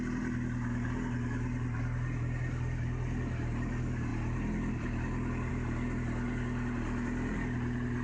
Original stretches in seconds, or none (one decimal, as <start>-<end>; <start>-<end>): 0.0-8.0